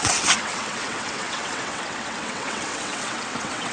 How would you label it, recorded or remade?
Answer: remade